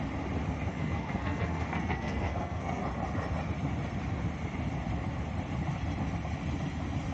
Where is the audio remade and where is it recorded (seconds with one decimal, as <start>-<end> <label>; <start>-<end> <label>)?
0.0-0.7 recorded; 0.7-2.8 remade; 2.8-7.1 recorded

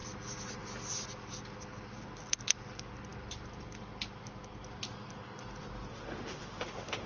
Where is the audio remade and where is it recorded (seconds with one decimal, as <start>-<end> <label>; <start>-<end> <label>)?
0.0-5.9 recorded; 5.9-7.1 remade

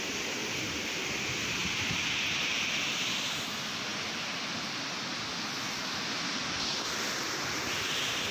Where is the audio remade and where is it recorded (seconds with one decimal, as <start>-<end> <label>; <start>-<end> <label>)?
0.0-0.4 recorded; 0.4-1.1 remade; 1.1-8.3 recorded

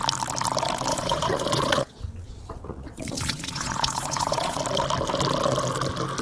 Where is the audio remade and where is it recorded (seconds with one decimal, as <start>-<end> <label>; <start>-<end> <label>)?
0.0-0.9 recorded; 0.9-4.6 remade; 4.6-6.2 recorded

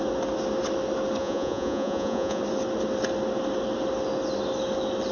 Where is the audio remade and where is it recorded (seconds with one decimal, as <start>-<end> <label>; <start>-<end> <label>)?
0.0-1.2 recorded; 1.2-2.4 remade; 2.4-5.1 recorded